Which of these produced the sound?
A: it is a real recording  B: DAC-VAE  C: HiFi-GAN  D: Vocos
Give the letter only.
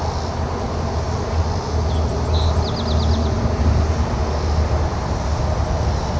A